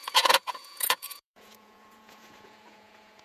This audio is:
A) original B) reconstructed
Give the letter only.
B